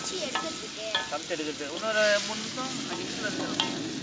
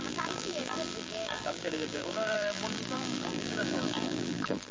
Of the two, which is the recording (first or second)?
first